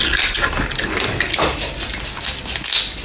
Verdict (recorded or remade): recorded